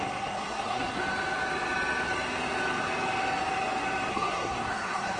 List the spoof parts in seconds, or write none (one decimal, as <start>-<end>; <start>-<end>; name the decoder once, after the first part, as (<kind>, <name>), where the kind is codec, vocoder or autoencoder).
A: 0.0-1.0 (codec, SNAC); 4.1-5.2